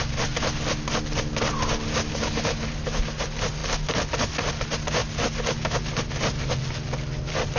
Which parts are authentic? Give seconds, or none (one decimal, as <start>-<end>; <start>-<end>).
0.0-2.1; 2.7-7.6